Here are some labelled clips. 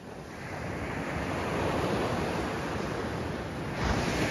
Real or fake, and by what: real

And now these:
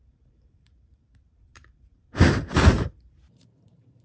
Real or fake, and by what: fake, vocoder, BigVGAN v2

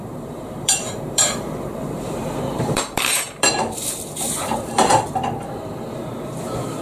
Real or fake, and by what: fake, vocoder, BigVGAN v2